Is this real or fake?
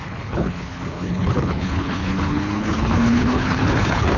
fake